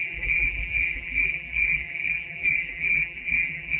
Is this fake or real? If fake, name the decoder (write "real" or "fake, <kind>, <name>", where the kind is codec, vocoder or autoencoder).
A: fake, vocoder, BigVGAN v2